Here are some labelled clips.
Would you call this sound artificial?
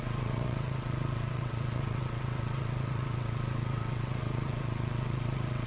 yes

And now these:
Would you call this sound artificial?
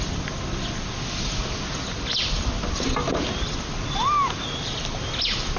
no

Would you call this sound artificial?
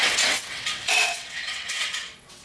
yes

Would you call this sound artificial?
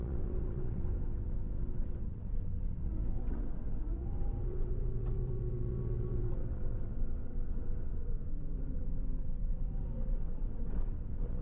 yes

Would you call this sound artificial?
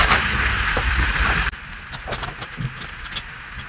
no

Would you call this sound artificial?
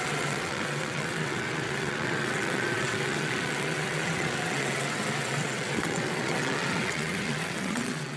yes